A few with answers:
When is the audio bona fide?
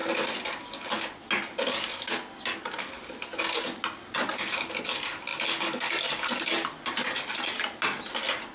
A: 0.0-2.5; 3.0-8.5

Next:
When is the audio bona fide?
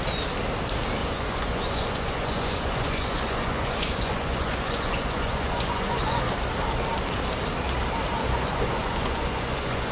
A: 0.0-1.0; 6.2-8.2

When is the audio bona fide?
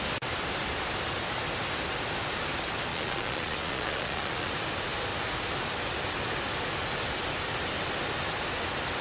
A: 0.0-2.9; 4.5-9.0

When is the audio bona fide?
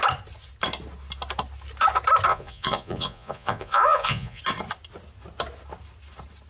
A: 0.0-2.3; 4.4-6.5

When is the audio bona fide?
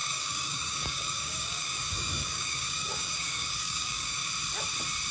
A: 4.2-5.1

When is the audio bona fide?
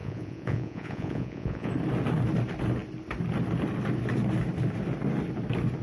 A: 1.7-5.8